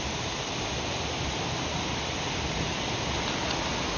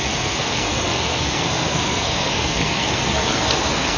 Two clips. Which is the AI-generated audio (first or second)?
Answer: second